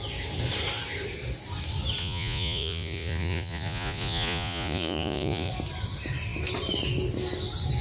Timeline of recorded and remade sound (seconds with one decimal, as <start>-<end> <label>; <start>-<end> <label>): 0.0-2.0 recorded; 2.0-5.5 remade; 5.5-7.8 recorded